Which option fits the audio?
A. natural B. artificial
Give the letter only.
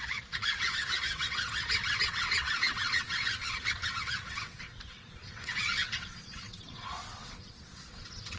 B